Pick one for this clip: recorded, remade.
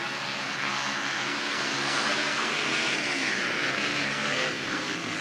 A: remade